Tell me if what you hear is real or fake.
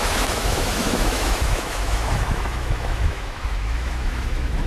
fake